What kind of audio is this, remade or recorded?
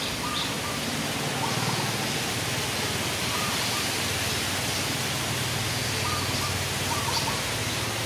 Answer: recorded